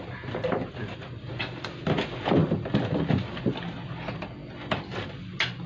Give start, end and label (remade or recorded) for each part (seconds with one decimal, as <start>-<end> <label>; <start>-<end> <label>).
0.0-0.8 recorded; 0.8-1.3 remade; 1.3-5.7 recorded